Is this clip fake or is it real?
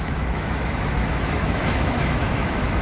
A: fake